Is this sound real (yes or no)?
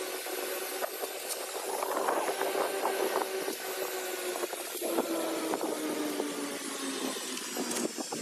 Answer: yes